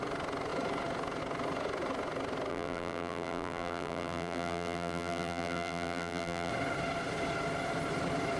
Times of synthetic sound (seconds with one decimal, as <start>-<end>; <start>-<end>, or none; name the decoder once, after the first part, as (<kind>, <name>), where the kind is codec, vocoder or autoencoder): 2.5-6.5 (vocoder, BigVGAN v2)